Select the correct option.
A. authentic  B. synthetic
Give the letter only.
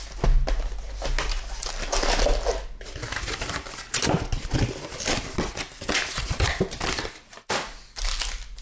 A